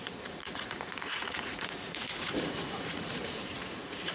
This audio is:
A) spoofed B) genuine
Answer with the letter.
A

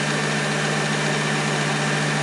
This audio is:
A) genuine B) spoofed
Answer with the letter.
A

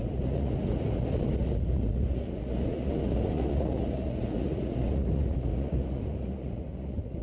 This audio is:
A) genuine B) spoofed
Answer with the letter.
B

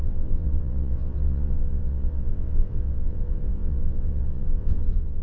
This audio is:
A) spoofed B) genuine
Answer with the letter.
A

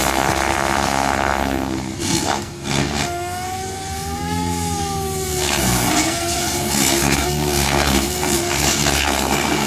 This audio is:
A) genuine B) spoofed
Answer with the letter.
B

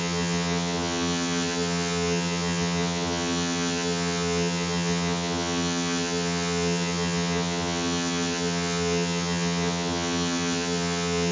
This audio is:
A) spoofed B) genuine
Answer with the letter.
A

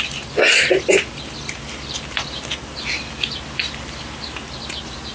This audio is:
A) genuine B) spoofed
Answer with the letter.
A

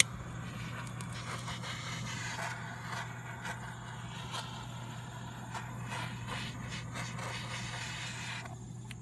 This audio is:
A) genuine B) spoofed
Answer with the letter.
A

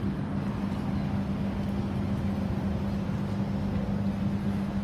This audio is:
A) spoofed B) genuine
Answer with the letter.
B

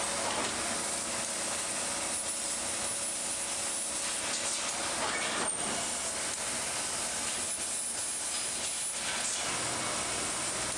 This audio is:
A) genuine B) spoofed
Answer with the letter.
A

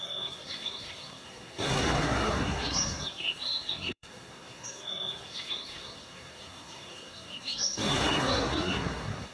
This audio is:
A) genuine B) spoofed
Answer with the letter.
B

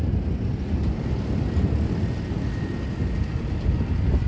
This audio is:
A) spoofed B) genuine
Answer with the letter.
B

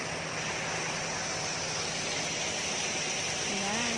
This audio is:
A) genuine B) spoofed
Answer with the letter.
B